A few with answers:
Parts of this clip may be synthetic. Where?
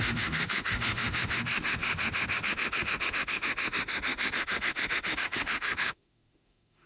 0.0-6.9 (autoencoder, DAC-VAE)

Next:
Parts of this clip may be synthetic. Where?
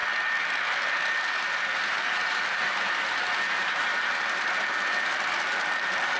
0.9-6.2 (vocoder, BigVGAN v2)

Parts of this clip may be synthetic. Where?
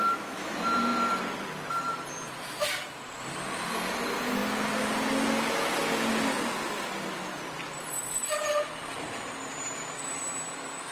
0.0-0.9 (vocoder, BigVGAN v2); 1.9-5.8; 7.8-10.2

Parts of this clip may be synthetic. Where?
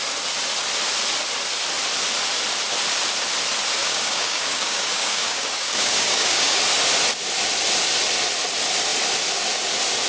3.8-6.6 (codec, DAC)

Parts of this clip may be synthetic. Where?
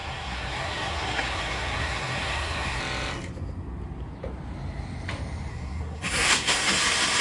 0.0-2.8 (codec, SNAC); 5.5-6.7